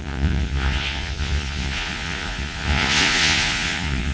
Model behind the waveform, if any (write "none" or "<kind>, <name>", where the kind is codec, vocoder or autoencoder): vocoder, Vocos